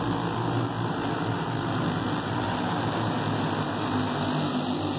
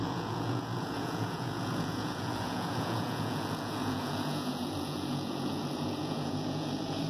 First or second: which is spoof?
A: second